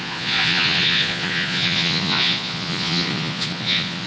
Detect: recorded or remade remade